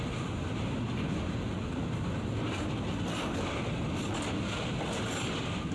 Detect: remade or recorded recorded